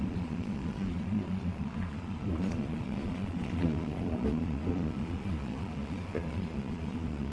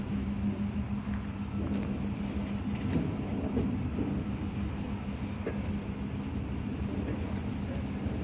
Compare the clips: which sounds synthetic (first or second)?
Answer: first